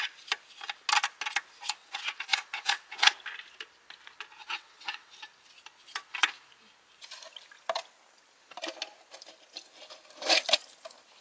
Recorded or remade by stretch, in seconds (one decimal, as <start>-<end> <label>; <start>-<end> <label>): 0.0-1.8 recorded; 1.8-3.1 remade; 3.1-4.4 recorded; 4.4-5.1 remade; 5.1-11.2 recorded